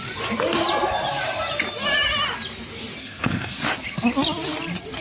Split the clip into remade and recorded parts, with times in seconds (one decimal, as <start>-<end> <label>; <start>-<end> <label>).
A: 0.0-3.0 recorded; 3.0-3.6 remade; 3.6-5.0 recorded